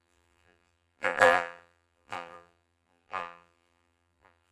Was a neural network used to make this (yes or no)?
yes